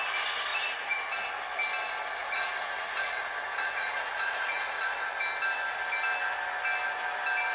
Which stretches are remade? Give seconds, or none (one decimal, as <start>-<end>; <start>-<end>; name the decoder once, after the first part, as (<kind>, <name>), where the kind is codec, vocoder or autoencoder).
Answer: 0.5-1.1 (vocoder, Vocos); 2.2-5.1